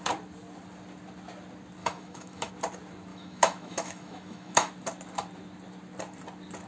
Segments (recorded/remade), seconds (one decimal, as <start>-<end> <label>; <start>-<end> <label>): 0.0-1.8 recorded; 1.8-2.5 remade; 2.5-3.1 recorded; 3.1-4.7 remade; 4.7-6.7 recorded

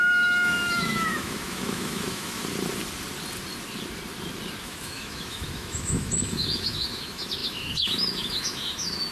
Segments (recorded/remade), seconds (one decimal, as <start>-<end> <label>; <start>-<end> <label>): 0.0-2.4 remade; 2.4-4.6 recorded; 4.6-9.1 remade